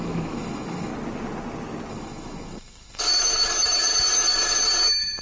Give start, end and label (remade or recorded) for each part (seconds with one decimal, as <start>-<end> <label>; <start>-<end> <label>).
0.0-0.9 remade; 0.9-1.9 recorded; 1.9-5.2 remade